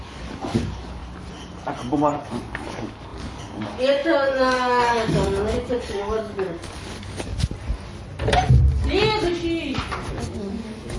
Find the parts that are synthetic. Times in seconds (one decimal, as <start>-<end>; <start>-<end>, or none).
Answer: 0.0-1.0; 2.2-7.3; 10.1-11.0